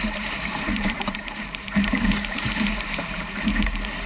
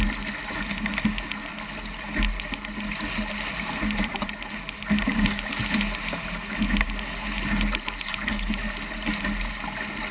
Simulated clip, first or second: first